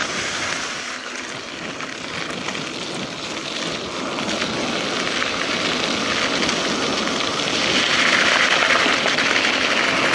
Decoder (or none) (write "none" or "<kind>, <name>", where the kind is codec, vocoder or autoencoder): none